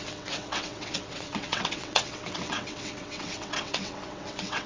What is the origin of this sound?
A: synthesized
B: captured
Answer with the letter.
A